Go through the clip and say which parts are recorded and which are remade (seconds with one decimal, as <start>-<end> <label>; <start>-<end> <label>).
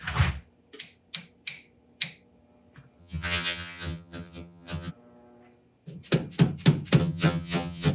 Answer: 0.0-3.0 recorded; 3.0-4.9 remade; 4.9-7.0 recorded; 7.0-7.9 remade